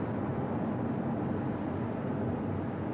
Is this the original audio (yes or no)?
yes